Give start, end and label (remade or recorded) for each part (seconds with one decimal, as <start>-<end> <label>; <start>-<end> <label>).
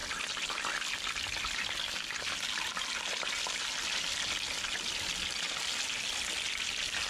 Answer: 0.0-7.1 recorded